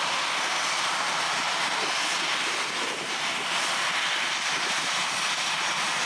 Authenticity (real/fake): real